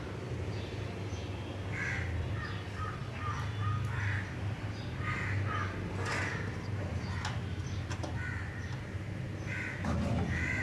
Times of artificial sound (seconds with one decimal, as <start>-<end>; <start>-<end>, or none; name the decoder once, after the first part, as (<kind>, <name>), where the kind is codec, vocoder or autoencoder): none